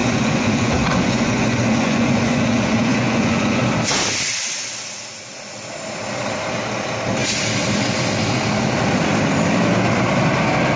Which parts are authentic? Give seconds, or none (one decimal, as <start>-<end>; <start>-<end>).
3.6-10.8